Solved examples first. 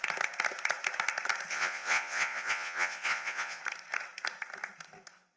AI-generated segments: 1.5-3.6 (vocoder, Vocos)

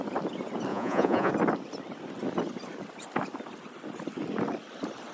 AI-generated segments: 0.7-1.3 (vocoder, Vocos)